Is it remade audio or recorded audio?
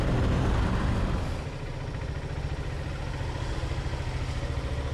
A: recorded